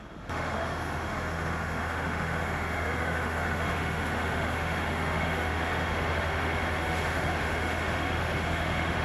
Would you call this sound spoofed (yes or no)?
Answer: yes